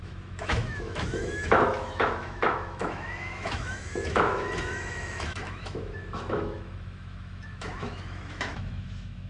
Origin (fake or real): fake